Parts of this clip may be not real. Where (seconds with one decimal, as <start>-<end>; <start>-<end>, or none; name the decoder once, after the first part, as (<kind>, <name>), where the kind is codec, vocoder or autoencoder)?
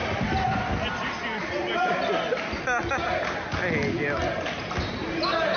none